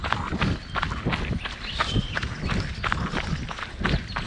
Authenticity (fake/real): real